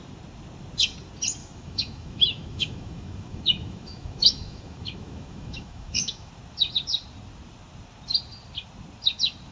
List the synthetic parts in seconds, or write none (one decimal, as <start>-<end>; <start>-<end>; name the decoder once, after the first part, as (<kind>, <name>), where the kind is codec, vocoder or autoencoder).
1.4-6.3 (autoencoder, DAC-VAE)